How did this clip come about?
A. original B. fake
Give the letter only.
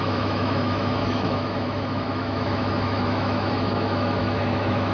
B